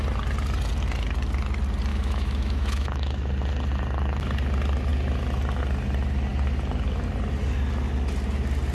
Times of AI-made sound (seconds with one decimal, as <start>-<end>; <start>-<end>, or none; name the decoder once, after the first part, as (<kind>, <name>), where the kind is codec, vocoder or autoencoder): 1.9-3.3 (autoencoder, DAC-VAE)